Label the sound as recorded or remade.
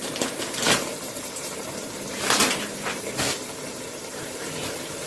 remade